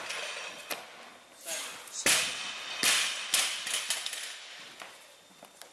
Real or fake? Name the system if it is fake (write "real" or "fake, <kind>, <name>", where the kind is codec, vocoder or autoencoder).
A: real